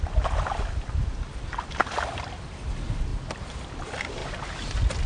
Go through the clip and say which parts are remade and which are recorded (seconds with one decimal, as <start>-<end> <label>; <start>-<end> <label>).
0.0-3.1 remade; 3.1-3.8 recorded; 3.8-4.2 remade; 4.2-5.1 recorded